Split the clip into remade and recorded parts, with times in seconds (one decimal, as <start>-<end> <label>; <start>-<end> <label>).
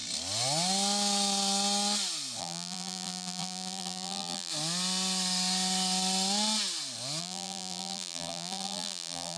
0.0-2.4 recorded; 2.4-4.5 remade; 4.5-7.2 recorded; 7.2-9.4 remade